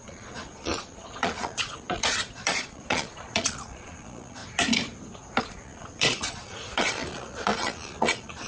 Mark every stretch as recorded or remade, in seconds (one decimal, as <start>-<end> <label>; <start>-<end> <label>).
0.0-4.4 remade; 4.4-5.4 recorded; 5.4-8.5 remade